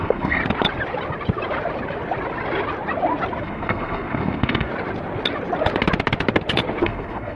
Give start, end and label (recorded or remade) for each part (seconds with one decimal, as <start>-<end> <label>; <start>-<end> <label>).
0.0-0.4 remade; 0.4-3.4 recorded; 3.4-4.7 remade; 4.7-6.8 recorded; 6.8-7.4 remade